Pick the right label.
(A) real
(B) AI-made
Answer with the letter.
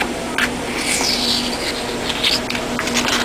A